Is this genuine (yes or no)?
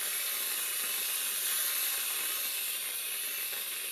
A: yes